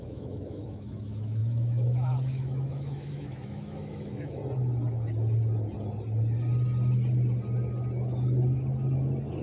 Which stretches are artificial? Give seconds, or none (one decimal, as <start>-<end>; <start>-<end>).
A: 0.0-4.4